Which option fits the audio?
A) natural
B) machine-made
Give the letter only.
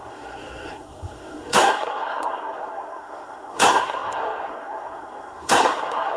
B